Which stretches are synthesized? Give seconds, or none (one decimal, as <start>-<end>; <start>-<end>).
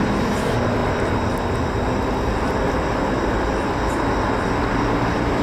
none